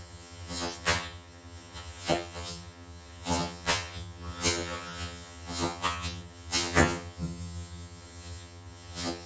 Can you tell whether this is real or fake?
fake